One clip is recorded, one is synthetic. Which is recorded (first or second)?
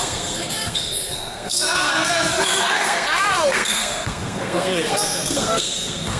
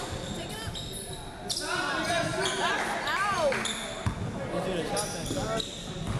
second